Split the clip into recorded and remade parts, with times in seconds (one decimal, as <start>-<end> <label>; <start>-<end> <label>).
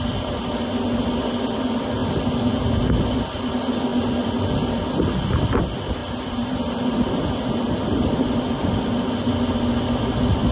0.0-10.5 recorded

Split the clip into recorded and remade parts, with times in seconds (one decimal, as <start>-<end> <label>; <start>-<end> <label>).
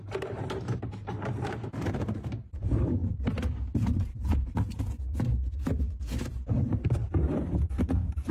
0.0-3.0 remade; 3.0-5.8 recorded; 5.8-8.3 remade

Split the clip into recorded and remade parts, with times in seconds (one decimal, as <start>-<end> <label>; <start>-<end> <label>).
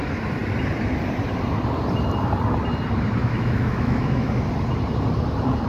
0.0-3.2 recorded; 3.2-4.3 remade; 4.3-5.7 recorded